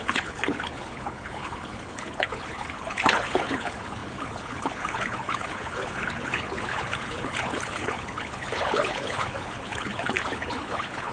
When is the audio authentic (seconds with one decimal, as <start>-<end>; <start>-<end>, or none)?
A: none